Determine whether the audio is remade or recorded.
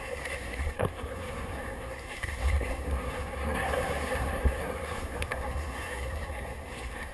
remade